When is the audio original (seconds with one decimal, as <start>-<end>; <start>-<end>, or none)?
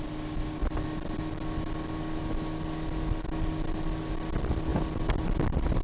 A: 0.0-5.8